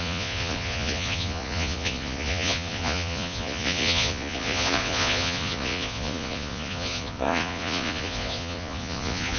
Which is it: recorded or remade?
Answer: remade